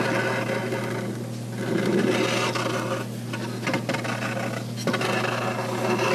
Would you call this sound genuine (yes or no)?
yes